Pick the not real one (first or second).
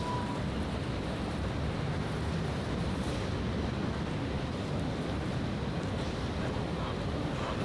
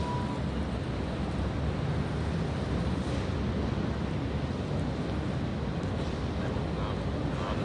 first